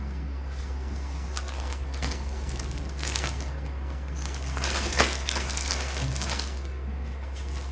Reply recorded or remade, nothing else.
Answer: remade